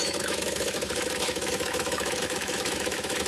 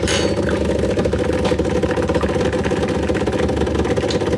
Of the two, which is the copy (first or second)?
first